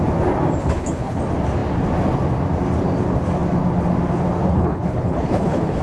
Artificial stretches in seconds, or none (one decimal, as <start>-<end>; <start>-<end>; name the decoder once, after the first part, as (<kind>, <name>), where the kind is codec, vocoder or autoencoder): 0.6-1.2 (codec, HILCodec); 4.5-5.8